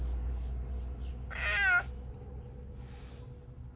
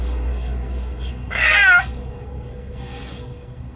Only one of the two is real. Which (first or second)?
first